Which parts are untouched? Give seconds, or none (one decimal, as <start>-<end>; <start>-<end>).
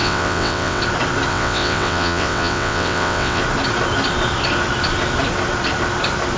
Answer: 0.8-1.3; 3.4-6.4